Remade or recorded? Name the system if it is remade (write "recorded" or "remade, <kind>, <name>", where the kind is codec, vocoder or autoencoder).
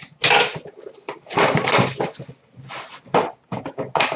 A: recorded